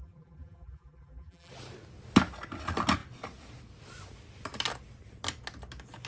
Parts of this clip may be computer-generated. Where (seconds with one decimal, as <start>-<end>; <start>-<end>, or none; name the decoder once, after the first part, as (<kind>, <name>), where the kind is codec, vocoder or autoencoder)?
0.0-1.5 (vocoder, BigVGAN v2)